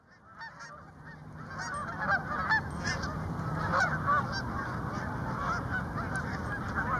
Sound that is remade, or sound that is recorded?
recorded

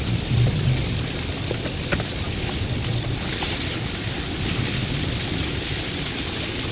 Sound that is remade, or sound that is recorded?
recorded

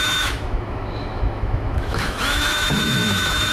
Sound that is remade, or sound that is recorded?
remade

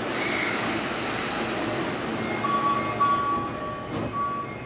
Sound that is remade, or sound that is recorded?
recorded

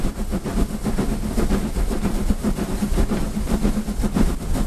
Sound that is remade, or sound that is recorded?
recorded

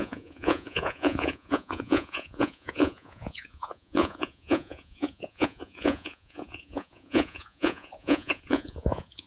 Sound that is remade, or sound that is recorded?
remade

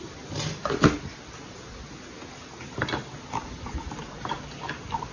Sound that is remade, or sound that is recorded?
recorded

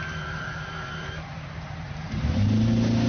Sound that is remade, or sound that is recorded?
remade